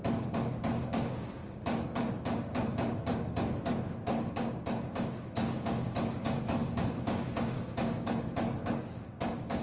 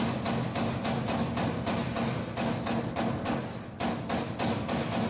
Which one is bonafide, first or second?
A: second